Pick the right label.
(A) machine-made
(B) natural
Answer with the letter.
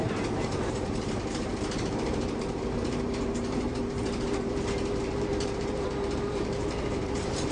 A